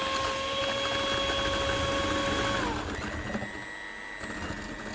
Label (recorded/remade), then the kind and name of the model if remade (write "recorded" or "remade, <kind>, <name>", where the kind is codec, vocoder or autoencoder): recorded